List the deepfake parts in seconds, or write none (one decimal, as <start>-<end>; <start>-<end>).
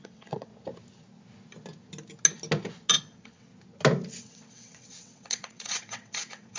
0.0-0.5; 2.9-3.5; 4.2-6.6